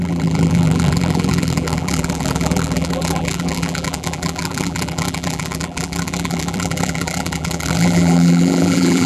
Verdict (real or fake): fake